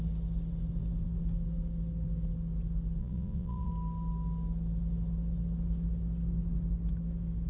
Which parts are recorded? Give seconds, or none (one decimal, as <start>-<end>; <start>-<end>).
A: 0.0-3.0; 3.7-7.5

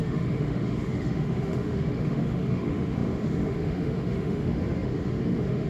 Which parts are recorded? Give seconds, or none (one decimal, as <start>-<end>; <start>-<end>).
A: none

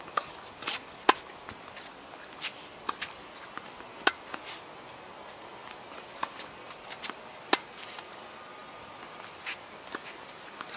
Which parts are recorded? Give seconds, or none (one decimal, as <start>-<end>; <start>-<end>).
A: 0.0-10.8

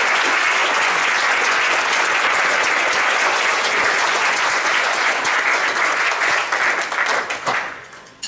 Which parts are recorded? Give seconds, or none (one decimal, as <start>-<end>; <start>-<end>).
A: 6.4-7.3

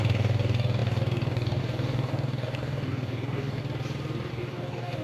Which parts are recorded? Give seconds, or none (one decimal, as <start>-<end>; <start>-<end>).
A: 3.6-4.3

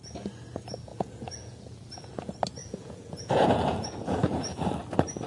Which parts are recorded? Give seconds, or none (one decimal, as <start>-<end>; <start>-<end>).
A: 0.0-0.9; 1.9-2.6; 4.7-5.3

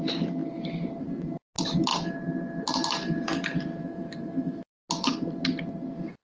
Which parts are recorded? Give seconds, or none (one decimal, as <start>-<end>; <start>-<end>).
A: 0.0-3.8; 4.7-6.2